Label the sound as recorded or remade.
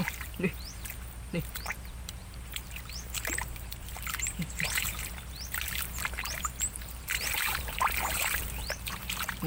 remade